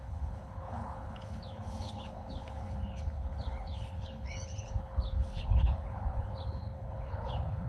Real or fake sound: fake